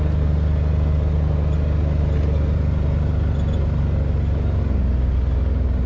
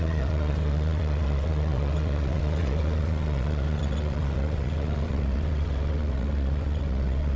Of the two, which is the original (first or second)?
first